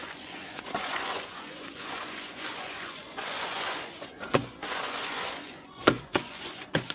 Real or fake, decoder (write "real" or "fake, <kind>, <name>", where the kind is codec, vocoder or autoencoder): fake, vocoder, Vocos